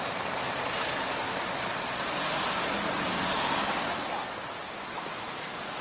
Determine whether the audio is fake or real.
real